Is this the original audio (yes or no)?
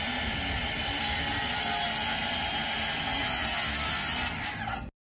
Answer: yes